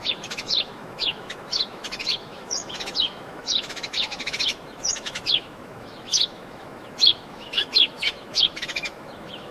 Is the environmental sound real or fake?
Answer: fake